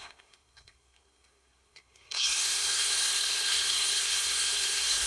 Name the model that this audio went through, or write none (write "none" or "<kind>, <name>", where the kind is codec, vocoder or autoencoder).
codec, SNAC